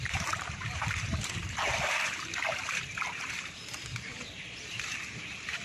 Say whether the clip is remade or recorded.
remade